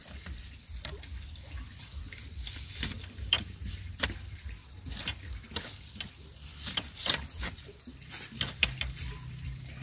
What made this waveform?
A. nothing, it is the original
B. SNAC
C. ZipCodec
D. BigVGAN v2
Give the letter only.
D